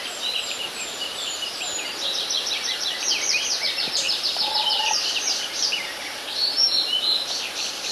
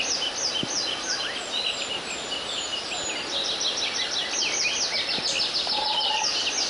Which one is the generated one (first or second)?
first